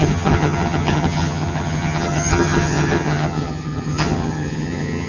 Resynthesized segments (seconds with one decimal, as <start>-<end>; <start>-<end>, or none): 0.0-5.1